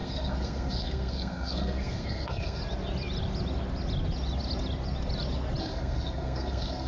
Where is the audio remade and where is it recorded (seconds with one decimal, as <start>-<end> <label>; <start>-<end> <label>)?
0.0-2.6 remade; 2.6-5.6 recorded; 5.6-6.9 remade